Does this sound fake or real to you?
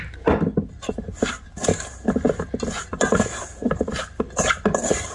real